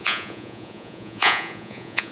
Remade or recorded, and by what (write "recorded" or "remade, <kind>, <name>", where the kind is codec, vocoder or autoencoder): remade, vocoder, Vocos